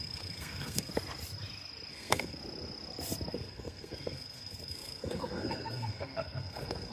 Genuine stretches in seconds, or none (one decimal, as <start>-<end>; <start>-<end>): 0.9-1.9; 2.4-3.3